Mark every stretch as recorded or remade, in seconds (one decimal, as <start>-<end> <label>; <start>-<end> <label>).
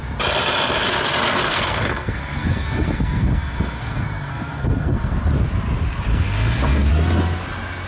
0.0-1.5 recorded; 1.5-5.2 remade; 5.2-6.1 recorded; 6.1-6.9 remade; 6.9-7.9 recorded